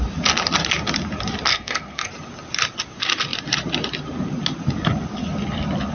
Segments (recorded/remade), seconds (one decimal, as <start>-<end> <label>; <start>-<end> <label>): 0.0-1.5 recorded; 1.5-2.1 remade; 2.1-5.9 recorded